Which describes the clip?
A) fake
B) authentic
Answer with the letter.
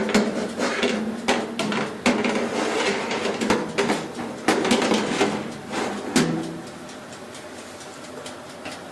B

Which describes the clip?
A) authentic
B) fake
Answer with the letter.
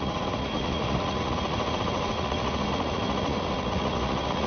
B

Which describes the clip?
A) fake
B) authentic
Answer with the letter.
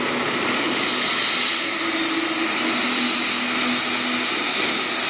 B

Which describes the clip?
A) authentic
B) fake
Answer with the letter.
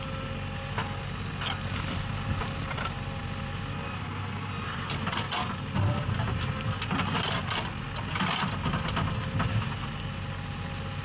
A